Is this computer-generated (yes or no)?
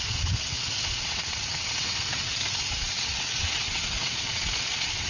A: yes